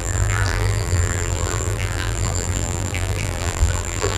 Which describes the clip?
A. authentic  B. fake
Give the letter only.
B